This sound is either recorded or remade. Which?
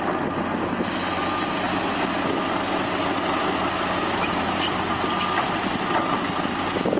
recorded